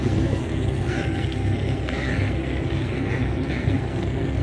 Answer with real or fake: fake